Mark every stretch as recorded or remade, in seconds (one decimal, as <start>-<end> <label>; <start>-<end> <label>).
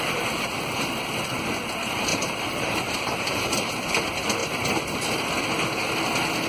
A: 0.0-2.1 recorded; 2.1-3.9 remade; 3.9-6.5 recorded